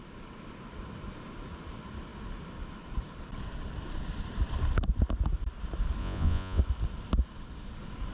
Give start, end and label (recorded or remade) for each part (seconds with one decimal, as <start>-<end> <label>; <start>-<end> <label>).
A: 0.0-6.0 recorded; 6.0-6.6 remade; 6.6-8.1 recorded